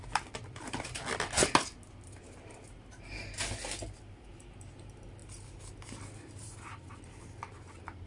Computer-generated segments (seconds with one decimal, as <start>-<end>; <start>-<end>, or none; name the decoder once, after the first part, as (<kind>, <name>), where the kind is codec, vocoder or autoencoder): none